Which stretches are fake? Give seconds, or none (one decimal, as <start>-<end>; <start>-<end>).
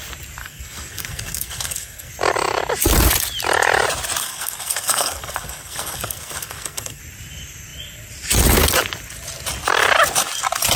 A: 0.4-2.1; 4.2-7.0